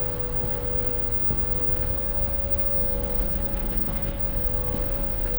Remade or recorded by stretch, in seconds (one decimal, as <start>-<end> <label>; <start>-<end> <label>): 0.0-3.3 recorded; 3.3-4.2 remade; 4.2-5.4 recorded